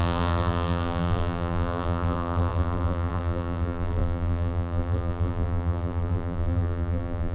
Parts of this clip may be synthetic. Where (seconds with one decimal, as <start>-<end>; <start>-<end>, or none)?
0.0-7.3